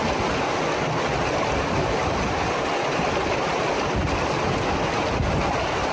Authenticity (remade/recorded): recorded